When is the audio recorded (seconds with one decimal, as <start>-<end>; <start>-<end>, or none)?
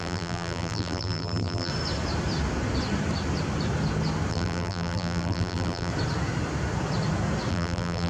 1.7-4.3; 5.9-7.5